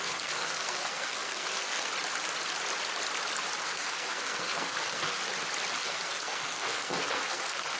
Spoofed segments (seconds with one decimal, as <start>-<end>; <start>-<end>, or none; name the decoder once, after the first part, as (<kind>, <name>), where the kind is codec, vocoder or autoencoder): 0.0-1.9 (codec, SNAC); 3.6-5.2; 5.8-7.8